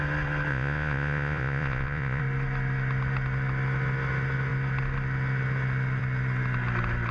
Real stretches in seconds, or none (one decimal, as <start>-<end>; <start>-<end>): 0.0-0.5; 2.2-7.1